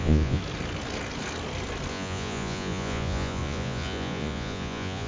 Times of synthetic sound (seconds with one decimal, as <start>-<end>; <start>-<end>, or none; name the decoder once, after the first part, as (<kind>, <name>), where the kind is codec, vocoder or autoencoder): 0.0-0.4 (vocoder, Vocos); 1.9-5.1